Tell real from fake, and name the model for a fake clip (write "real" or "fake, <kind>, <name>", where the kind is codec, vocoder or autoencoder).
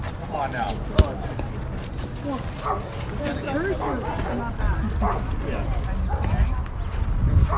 real